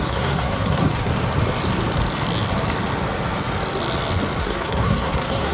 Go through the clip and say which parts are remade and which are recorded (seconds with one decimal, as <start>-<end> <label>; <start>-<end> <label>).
0.0-1.1 remade; 1.1-4.4 recorded; 4.4-5.5 remade